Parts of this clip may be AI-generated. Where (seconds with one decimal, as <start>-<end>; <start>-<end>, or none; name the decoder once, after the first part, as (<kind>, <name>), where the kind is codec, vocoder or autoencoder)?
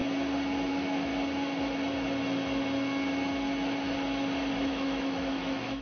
0.7-1.1 (autoencoder, DAC-VAE); 4.6-5.8